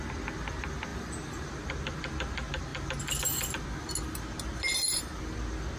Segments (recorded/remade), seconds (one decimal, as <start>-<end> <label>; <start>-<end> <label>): 0.0-0.9 recorded; 0.9-1.5 remade; 1.5-5.8 recorded